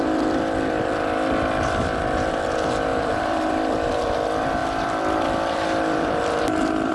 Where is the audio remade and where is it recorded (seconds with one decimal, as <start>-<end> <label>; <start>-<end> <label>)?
0.0-2.9 recorded; 2.9-4.0 remade; 4.0-4.6 recorded; 4.6-6.9 remade